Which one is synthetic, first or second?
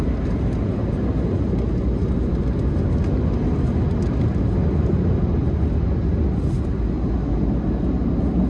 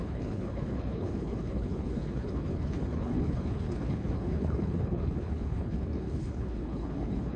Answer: second